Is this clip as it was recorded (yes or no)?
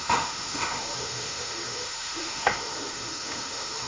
no